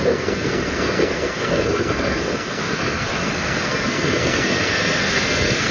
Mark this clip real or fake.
fake